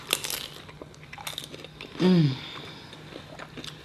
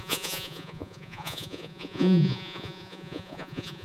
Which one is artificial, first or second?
second